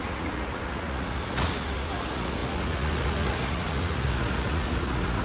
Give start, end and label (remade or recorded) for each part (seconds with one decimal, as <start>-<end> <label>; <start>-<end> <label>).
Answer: 0.0-5.2 remade